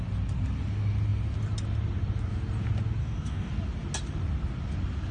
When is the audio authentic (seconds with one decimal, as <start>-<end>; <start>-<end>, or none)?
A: 0.0-3.0; 3.5-5.1